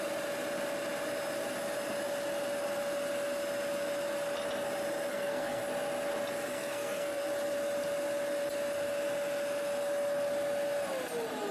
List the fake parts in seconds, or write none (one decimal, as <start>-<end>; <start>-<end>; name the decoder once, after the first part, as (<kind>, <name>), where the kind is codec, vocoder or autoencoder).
5.1-5.6 (codec, SNAC); 6.5-7.2